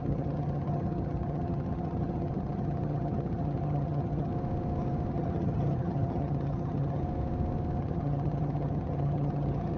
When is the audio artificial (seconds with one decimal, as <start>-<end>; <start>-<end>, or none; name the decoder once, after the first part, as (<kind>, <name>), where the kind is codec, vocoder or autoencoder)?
0.0-4.3 (vocoder, HiFi-GAN); 5.1-7.0; 7.8-9.8